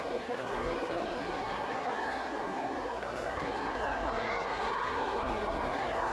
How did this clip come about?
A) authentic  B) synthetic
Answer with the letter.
B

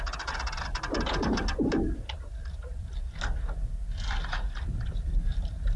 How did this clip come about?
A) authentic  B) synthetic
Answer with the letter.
A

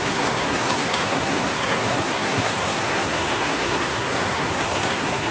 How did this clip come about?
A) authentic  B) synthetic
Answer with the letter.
B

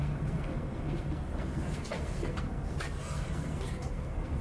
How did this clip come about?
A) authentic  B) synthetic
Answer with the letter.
B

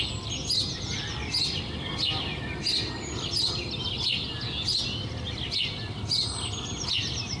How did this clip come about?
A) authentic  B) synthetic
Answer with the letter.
A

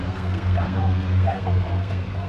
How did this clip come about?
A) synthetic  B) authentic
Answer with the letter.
A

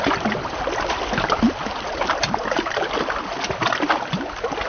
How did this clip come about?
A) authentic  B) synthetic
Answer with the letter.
A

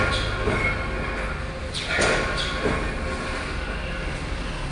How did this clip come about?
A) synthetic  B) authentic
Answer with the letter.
B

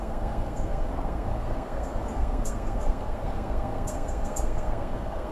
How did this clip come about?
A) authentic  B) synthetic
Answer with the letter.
B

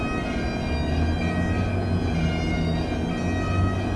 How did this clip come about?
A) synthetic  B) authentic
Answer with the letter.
B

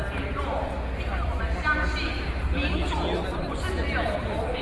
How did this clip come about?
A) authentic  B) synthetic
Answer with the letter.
A